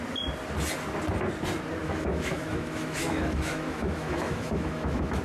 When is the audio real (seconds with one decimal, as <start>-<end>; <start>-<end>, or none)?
0.0-1.8